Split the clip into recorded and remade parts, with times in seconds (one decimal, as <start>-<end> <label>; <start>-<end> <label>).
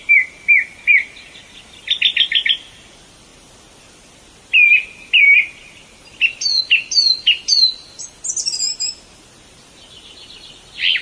0.0-11.0 recorded